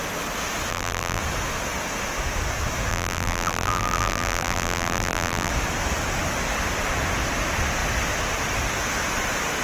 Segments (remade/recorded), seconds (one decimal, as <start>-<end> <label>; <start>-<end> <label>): 0.0-0.7 recorded; 0.7-1.2 remade; 1.2-2.9 recorded; 2.9-5.5 remade; 5.5-9.6 recorded